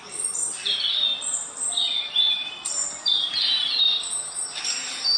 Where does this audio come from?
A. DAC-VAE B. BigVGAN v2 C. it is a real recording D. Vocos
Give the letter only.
B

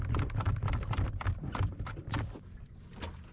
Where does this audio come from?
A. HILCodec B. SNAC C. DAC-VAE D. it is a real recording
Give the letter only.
D